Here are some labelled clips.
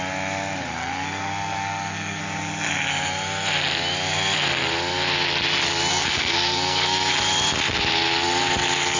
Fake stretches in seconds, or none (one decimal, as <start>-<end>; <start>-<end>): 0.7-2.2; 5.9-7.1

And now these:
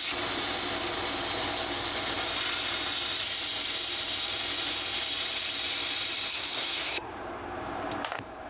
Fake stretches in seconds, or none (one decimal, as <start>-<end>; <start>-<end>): 6.3-7.1

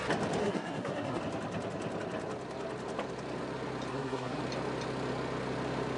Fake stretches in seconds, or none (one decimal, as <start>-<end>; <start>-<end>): 0.4-1.2; 3.9-4.4